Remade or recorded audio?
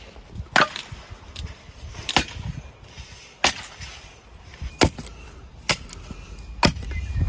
recorded